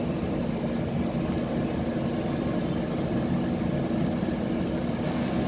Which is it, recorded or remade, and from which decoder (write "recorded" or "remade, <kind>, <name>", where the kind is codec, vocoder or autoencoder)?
recorded